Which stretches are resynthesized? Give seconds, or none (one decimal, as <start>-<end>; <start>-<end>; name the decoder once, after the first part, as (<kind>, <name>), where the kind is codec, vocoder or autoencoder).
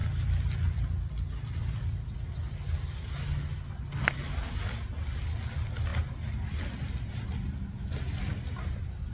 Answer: none